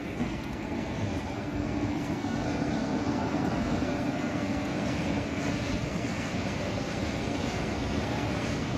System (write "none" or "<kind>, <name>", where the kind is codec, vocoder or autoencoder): codec, SNAC